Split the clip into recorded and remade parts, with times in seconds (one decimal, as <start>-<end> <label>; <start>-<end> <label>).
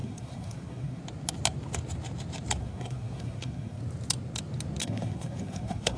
0.0-1.0 remade; 1.0-2.6 recorded; 2.6-3.8 remade; 3.8-4.8 recorded; 4.8-6.0 remade